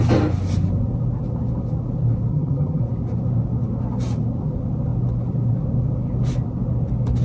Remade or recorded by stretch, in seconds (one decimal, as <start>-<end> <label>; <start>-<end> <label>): 0.0-2.3 recorded; 2.3-2.8 remade; 2.8-7.2 recorded